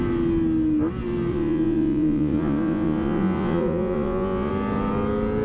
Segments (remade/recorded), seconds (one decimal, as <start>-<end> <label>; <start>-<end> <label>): 0.0-1.3 recorded; 1.3-4.5 remade; 4.5-5.4 recorded